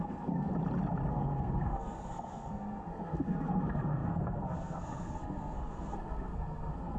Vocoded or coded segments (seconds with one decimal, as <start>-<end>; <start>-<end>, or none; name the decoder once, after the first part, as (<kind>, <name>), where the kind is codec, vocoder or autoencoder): 0.0-0.5 (codec, SNAC); 1.1-7.0